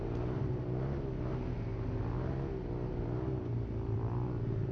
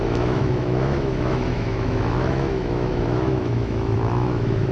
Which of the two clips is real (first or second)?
first